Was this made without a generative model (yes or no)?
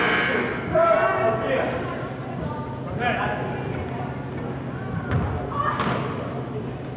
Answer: yes